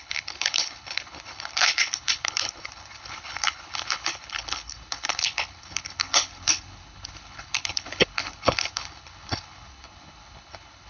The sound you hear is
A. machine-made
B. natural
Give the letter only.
A